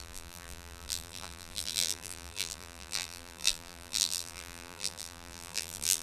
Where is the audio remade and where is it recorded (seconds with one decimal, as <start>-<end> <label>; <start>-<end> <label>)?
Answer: 0.0-6.0 remade